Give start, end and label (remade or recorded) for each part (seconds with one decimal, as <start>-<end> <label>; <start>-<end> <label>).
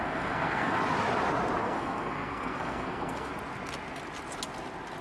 0.0-0.8 remade; 0.8-1.6 recorded; 1.6-3.3 remade; 3.3-5.0 recorded